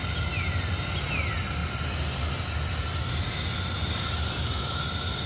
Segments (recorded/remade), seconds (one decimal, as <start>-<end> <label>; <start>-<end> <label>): 0.0-1.6 recorded; 1.6-2.3 remade; 2.3-5.3 recorded